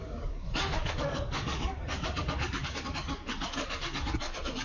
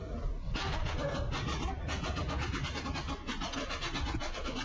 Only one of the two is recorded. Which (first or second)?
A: second